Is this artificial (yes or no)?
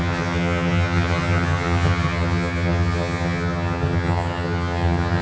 yes